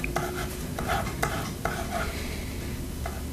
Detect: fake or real real